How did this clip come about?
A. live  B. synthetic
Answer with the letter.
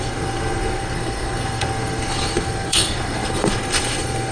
B